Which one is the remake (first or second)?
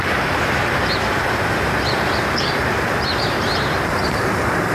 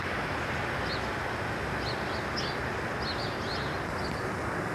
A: first